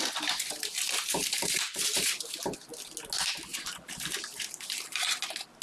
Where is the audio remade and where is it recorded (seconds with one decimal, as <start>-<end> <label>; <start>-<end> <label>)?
0.0-2.4 remade; 2.4-3.5 recorded; 3.5-5.0 remade; 5.0-5.6 recorded